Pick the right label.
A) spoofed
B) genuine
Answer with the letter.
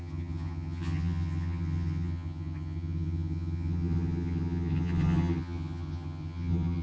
A